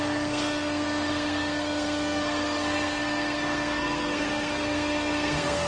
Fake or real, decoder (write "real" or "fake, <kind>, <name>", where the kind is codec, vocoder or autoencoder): fake, codec, SNAC